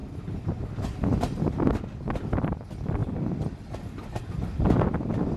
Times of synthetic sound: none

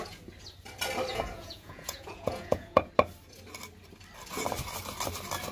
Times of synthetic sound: 1.1-2.9 (vocoder, Vocos)

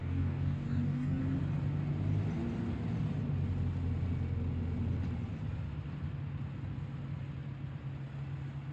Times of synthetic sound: 0.0-1.2 (codec, DAC)

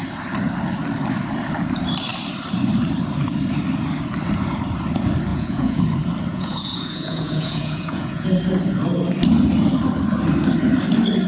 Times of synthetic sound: 5.3-5.8 (vocoder, Vocos); 6.3-8.3

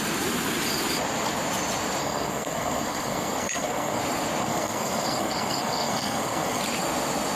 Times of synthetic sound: 2.0-4.0 (codec, SNAC); 4.4-6.6